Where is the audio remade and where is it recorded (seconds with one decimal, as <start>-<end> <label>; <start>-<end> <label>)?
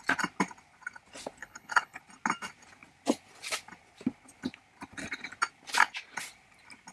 0.0-1.4 recorded; 1.4-2.0 remade; 2.0-6.9 recorded